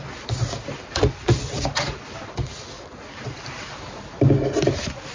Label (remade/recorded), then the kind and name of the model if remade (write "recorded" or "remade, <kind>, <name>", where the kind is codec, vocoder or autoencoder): recorded